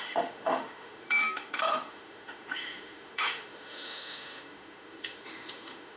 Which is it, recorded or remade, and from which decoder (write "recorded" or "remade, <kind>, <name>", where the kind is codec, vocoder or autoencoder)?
remade, autoencoder, DAC-VAE